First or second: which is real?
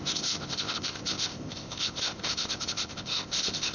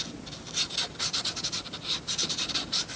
second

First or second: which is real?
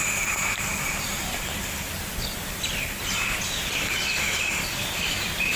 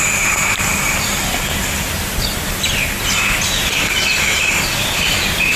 second